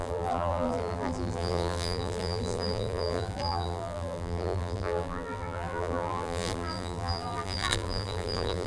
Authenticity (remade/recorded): remade